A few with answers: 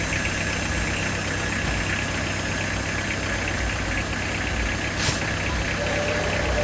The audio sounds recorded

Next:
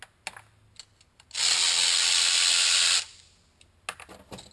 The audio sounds recorded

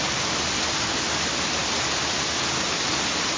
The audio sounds remade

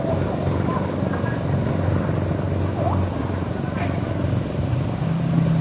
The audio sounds recorded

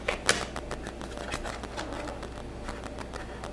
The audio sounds recorded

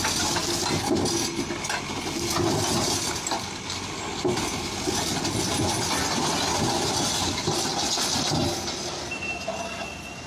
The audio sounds recorded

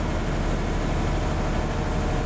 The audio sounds recorded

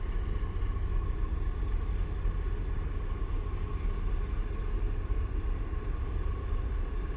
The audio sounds recorded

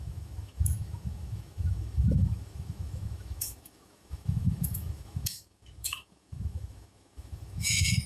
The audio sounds remade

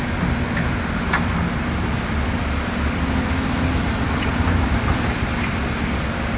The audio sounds recorded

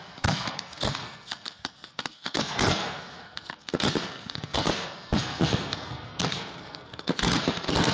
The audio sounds remade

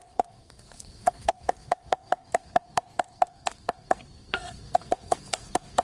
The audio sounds remade